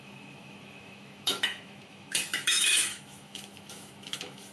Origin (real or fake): fake